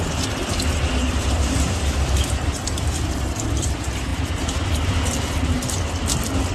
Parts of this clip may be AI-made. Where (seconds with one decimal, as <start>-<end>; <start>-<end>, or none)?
none